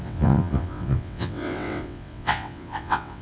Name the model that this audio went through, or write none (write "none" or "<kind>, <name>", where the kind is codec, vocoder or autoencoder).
vocoder, WaveNeXt